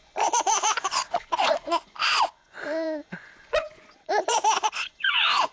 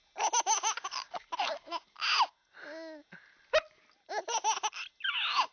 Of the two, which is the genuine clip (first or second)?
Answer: second